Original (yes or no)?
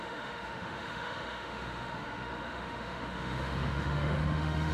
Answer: no